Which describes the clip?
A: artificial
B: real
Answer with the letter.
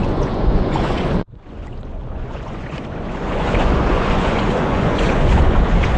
A